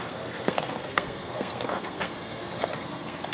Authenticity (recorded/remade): remade